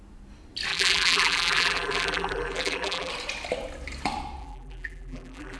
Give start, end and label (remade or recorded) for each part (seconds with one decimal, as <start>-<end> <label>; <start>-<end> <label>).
0.0-0.7 recorded; 0.7-3.1 remade; 3.1-4.4 recorded; 4.4-5.6 remade